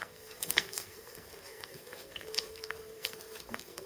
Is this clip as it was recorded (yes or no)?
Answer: no